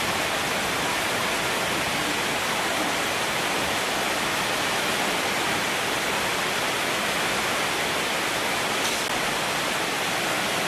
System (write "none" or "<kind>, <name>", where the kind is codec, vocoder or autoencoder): none